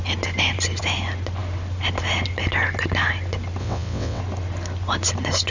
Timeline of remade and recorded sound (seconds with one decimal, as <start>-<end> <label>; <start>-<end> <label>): 0.0-3.6 recorded; 3.6-4.2 remade; 4.2-5.5 recorded